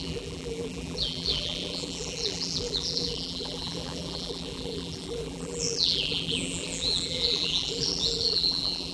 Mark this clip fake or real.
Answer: fake